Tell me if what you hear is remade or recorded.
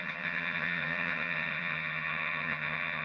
remade